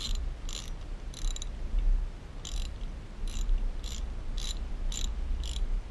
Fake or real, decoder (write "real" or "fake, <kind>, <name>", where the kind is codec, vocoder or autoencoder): real